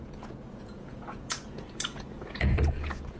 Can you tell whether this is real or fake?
fake